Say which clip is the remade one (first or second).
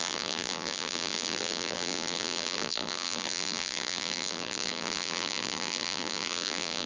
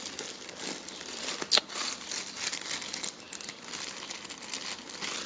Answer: first